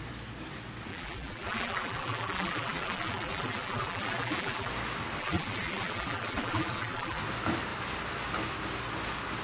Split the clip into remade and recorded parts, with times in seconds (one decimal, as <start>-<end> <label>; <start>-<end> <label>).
0.0-0.9 recorded; 0.9-4.7 remade; 4.7-5.2 recorded; 5.2-7.2 remade; 7.2-9.4 recorded